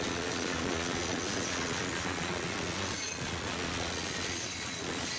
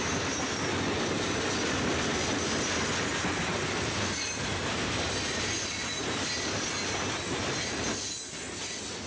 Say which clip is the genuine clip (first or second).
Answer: second